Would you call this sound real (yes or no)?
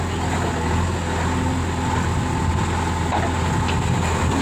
yes